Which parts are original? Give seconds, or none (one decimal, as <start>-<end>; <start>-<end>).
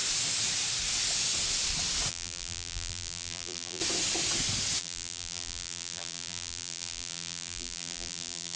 0.0-2.1; 3.8-4.8